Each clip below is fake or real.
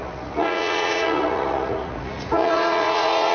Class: fake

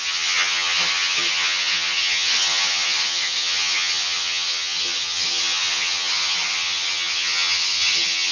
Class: fake